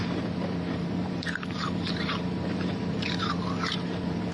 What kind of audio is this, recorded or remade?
remade